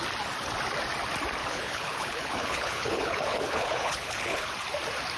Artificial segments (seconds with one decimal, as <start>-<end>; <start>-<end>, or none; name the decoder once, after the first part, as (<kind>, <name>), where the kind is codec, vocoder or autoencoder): 1.4-4.5 (codec, HILCodec)